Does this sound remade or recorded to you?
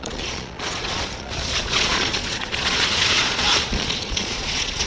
remade